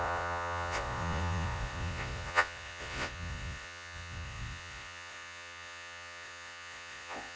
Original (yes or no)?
no